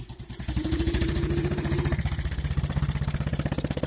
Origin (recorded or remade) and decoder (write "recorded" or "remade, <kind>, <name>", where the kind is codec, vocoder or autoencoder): remade, vocoder, BigVGAN v2